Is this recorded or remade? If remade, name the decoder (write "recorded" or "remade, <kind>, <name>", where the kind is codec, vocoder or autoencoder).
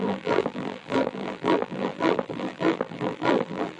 remade, vocoder, BigVGAN v2